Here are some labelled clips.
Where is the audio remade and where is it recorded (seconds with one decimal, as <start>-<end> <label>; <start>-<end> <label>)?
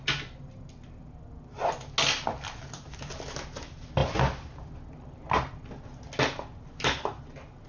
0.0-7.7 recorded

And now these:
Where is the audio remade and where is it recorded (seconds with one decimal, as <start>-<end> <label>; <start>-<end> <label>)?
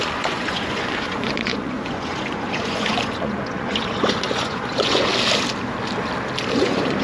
0.0-5.1 remade; 5.1-6.5 recorded; 6.5-7.0 remade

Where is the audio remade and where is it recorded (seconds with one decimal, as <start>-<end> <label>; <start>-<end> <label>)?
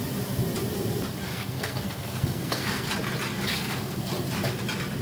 0.0-1.3 recorded; 1.3-2.9 remade; 2.9-3.5 recorded; 3.5-4.1 remade; 4.1-5.0 recorded